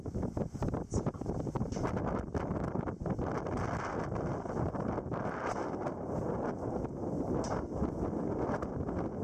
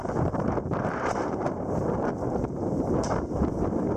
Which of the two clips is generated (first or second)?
second